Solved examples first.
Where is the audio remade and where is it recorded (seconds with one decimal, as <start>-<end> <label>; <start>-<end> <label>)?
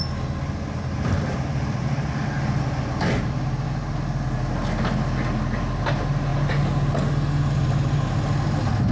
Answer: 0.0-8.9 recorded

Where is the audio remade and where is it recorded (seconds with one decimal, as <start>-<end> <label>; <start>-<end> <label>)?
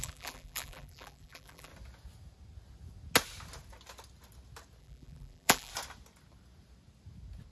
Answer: 0.0-1.7 remade; 1.7-4.8 recorded; 4.8-5.7 remade; 5.7-7.5 recorded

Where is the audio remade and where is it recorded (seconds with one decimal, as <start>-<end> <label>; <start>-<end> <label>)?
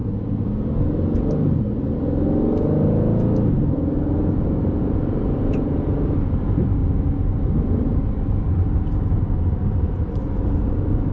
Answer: 0.0-4.8 recorded; 4.8-6.8 remade; 6.8-7.3 recorded; 7.3-7.9 remade; 7.9-8.5 recorded; 8.5-11.1 remade